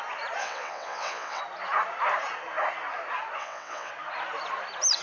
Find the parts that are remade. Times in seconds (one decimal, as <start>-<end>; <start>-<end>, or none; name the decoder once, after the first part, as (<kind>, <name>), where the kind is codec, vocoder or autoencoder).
0.4-1.4 (vocoder, WaveNeXt); 3.4-3.9